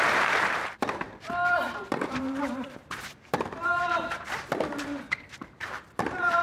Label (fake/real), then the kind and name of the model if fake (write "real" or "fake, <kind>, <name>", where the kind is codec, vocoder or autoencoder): fake, vocoder, BigVGAN v2